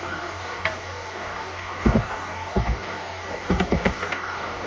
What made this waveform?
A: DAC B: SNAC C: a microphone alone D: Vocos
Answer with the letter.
A